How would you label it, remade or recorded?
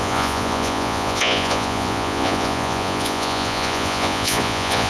remade